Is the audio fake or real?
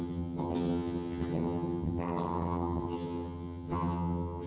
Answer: fake